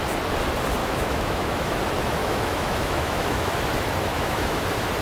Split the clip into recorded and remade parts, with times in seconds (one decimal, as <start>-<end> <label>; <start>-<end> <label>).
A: 0.0-0.8 recorded; 0.8-1.8 remade; 1.8-2.2 recorded; 2.2-3.5 remade; 3.5-4.1 recorded; 4.1-4.6 remade; 4.6-5.0 recorded